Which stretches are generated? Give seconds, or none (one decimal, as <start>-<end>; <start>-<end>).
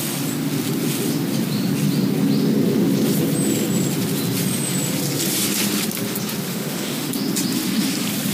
6.5-7.1